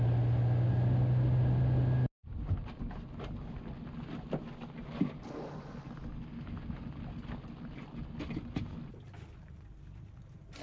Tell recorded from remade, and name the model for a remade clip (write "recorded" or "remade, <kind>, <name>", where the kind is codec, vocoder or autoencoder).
recorded